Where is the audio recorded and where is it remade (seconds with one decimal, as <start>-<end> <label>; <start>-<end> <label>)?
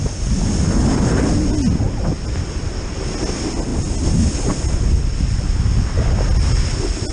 0.0-7.1 recorded